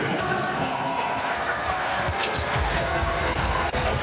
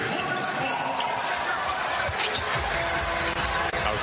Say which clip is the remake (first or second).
first